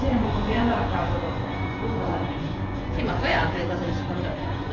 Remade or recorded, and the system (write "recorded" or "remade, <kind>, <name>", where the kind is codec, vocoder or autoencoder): remade, vocoder, Vocos